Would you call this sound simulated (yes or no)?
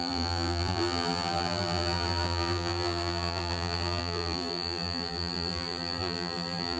yes